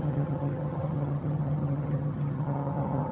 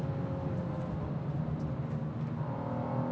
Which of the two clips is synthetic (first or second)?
first